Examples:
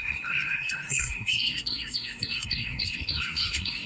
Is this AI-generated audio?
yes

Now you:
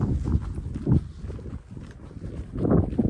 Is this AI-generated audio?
no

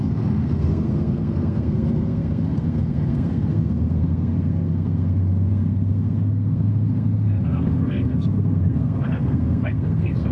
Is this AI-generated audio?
yes